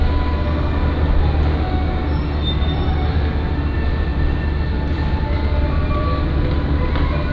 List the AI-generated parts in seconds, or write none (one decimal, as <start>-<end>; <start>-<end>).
none